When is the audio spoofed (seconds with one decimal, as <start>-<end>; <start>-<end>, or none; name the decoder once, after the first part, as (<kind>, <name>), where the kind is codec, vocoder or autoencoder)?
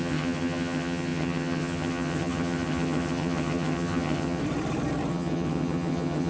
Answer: 0.0-4.4 (vocoder, HiFi-GAN); 5.1-6.3